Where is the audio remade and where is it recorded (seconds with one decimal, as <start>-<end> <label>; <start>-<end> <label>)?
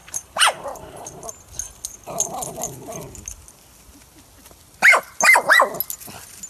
0.0-1.3 remade; 1.3-6.5 recorded